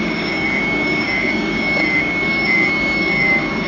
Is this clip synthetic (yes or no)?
yes